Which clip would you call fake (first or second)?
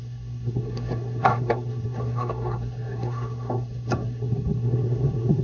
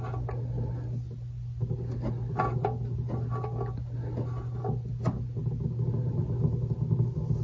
first